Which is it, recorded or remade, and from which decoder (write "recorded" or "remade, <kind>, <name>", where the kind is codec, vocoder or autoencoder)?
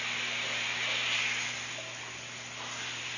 recorded